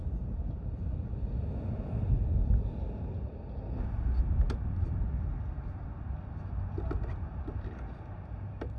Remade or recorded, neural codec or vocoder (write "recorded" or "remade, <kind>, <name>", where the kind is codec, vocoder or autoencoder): recorded